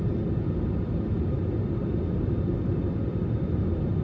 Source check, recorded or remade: recorded